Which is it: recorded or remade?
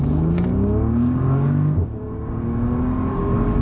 remade